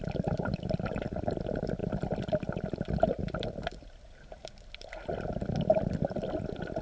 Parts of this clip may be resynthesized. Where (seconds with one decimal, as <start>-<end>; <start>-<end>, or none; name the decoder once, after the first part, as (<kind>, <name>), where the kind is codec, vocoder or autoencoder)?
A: none